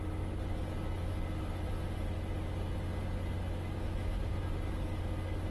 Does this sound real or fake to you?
real